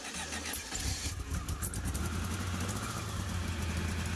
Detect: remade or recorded recorded